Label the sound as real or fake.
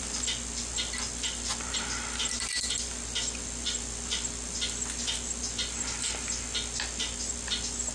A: real